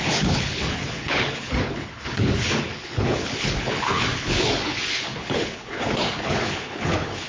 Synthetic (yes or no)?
yes